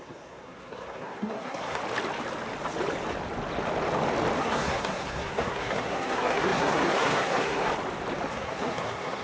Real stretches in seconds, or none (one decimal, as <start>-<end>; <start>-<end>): 1.8-4.4; 7.7-8.3